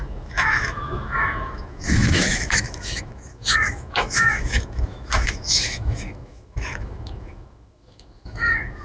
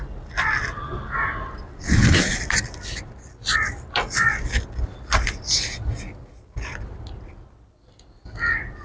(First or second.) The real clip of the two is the second